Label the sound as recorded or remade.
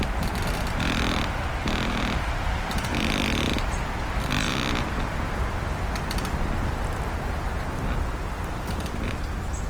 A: recorded